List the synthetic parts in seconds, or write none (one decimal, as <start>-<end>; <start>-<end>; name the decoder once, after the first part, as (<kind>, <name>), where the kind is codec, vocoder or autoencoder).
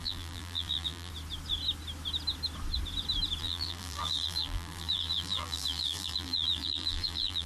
0.0-1.1 (vocoder, BigVGAN v2); 3.4-7.5